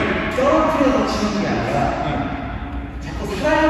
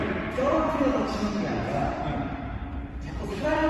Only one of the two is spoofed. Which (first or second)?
second